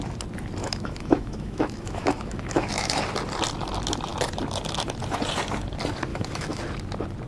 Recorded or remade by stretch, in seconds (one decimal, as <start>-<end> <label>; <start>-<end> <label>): 0.0-0.6 recorded; 0.6-3.0 remade; 3.0-6.1 recorded; 6.1-6.6 remade; 6.6-7.3 recorded